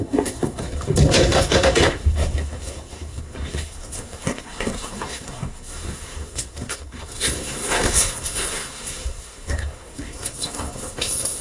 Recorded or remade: remade